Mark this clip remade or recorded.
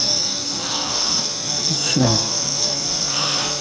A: remade